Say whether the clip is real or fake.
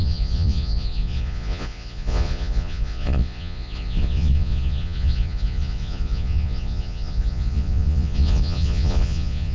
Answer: fake